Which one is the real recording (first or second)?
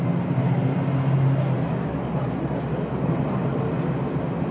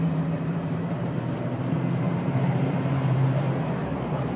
first